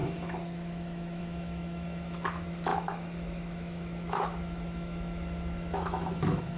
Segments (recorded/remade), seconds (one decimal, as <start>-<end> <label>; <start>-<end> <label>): 0.0-6.6 remade